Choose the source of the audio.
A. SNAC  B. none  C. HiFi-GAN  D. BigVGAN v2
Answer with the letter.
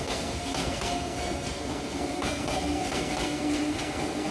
A